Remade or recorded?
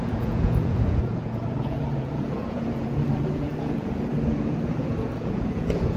remade